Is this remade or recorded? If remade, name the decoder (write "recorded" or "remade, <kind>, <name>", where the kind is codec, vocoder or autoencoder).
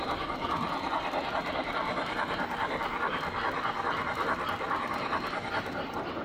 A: remade, vocoder, BigVGAN v2